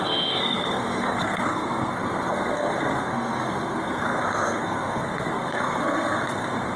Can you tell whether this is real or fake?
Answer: fake